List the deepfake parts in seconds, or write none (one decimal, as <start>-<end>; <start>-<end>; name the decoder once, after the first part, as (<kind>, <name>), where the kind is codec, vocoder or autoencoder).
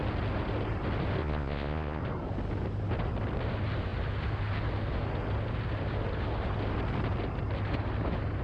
1.2-2.0 (vocoder, Vocos)